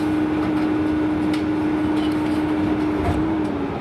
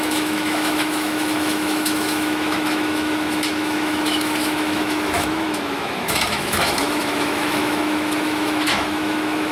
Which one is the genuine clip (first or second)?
first